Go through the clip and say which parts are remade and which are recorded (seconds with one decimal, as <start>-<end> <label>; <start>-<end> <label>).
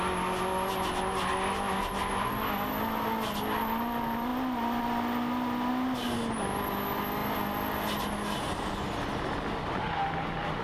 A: 0.0-10.6 recorded